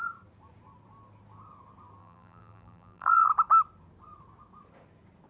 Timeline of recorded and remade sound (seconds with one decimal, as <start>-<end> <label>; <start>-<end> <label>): 0.0-2.0 recorded; 2.0-3.3 remade; 3.3-5.3 recorded